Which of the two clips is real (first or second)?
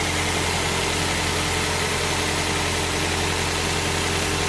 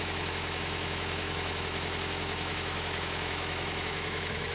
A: first